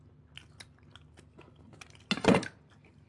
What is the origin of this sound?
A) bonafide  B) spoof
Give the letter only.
A